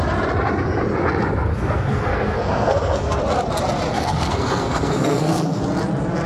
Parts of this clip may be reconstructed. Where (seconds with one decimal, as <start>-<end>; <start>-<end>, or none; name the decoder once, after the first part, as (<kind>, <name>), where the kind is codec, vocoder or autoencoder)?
1.5-3.2 (codec, SNAC); 3.9-5.6